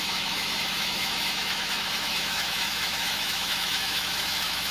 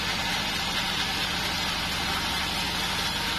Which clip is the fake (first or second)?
first